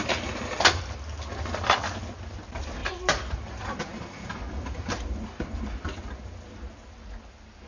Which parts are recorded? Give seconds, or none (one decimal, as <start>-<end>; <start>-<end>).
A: 0.0-7.7